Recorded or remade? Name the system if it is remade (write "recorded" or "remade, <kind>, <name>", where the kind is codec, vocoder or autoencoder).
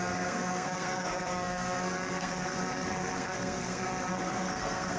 remade, codec, SNAC